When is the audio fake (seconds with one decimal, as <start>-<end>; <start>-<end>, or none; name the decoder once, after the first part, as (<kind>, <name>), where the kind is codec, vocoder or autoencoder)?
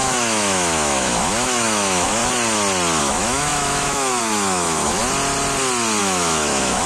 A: 0.0-2.2 (autoencoder, DAC-VAE); 3.0-5.0; 6.0-6.9